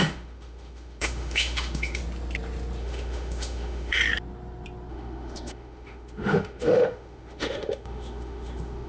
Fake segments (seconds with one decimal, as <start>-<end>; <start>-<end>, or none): 0.0-2.0; 2.8-4.0; 4.9-8.9